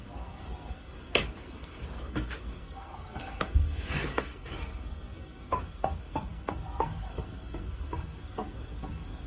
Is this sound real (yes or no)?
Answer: no